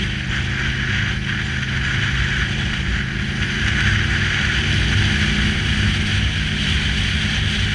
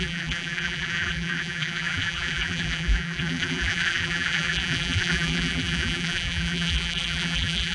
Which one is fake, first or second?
second